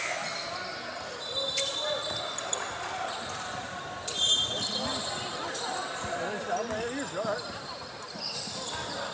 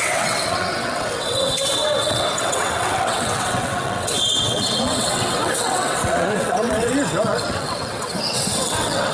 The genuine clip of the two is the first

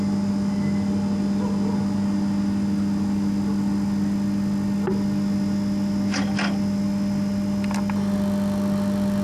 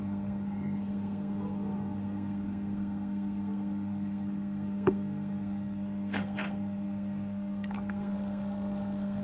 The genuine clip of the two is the first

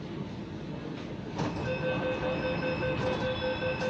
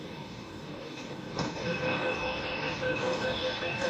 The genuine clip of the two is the first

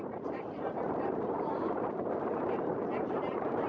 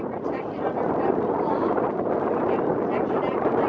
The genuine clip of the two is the second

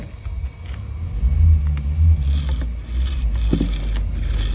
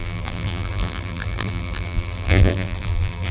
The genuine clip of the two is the first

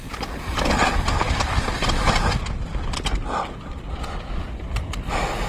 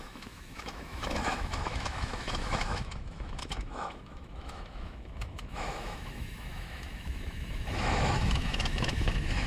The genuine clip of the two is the first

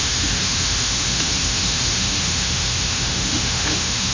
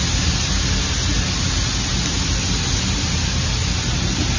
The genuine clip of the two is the second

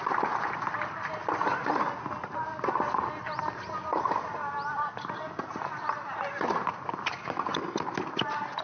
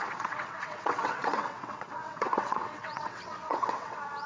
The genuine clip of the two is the first